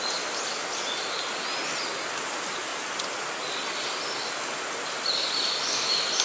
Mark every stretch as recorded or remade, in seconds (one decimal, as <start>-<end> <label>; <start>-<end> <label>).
0.0-6.2 recorded